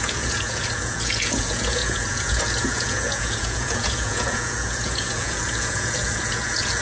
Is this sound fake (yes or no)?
yes